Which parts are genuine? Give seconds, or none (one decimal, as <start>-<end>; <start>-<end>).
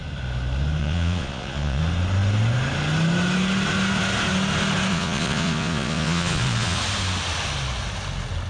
0.0-0.8; 1.8-4.9; 6.8-8.5